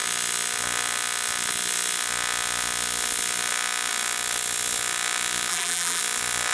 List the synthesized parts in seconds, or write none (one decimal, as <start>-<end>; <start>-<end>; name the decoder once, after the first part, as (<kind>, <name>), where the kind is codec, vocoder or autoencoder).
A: 5.5-6.0 (vocoder, BigVGAN v2)